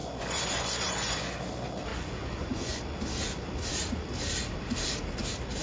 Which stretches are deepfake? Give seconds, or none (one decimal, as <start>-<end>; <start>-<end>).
0.0-1.3; 1.9-2.8